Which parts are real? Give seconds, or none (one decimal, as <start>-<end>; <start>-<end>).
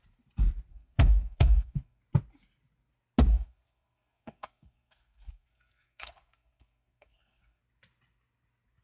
0.0-0.7; 2.0-3.3; 7.6-8.8